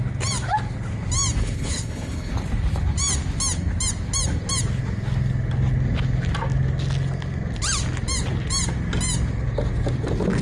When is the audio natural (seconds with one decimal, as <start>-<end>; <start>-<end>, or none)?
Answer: 0.0-1.4; 2.3-10.4